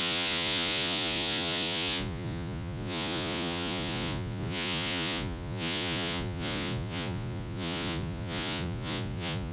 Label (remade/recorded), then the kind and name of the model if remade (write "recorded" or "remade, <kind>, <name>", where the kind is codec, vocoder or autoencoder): remade, vocoder, Vocos